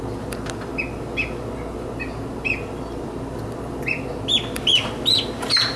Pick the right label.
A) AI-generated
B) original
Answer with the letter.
B